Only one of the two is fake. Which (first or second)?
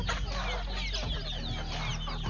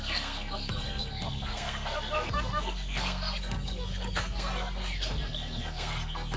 second